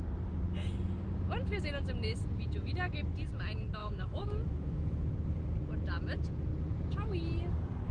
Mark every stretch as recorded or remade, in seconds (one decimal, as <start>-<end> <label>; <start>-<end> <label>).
0.0-3.8 recorded; 3.8-5.1 remade; 5.1-7.9 recorded